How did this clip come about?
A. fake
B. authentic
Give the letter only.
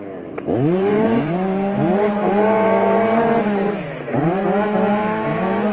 A